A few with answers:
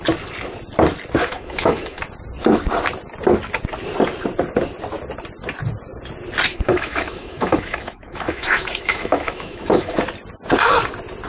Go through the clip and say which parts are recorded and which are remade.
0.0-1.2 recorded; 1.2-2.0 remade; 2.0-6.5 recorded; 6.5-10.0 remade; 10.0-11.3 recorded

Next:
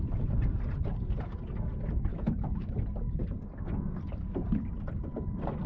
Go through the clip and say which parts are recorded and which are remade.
0.0-2.1 recorded; 2.1-2.7 remade; 2.7-5.7 recorded

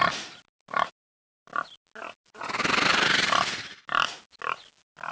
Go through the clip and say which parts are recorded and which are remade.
0.0-5.1 recorded

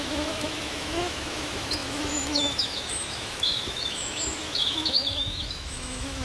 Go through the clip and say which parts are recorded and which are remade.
0.0-6.2 remade

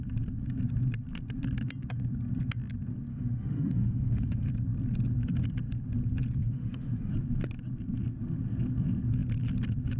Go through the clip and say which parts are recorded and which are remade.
0.0-3.1 recorded; 3.1-4.5 remade; 4.5-6.4 recorded; 6.4-7.1 remade; 7.1-10.0 recorded

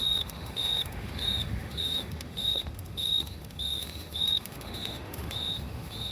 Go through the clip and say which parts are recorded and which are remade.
0.0-6.1 remade